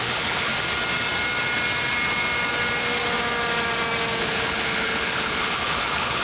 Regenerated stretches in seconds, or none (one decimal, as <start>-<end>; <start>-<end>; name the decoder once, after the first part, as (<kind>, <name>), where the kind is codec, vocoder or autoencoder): 0.0-0.5 (codec, HILCodec); 4.2-6.2